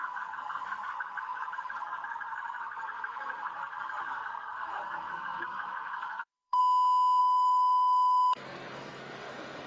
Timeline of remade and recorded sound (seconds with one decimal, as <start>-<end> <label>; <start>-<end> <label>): 0.0-6.6 remade; 6.6-7.2 recorded; 7.2-9.7 remade